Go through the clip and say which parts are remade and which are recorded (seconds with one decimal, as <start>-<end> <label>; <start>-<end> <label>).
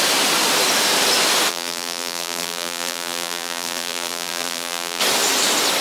0.0-1.5 recorded; 1.5-5.0 remade; 5.0-5.8 recorded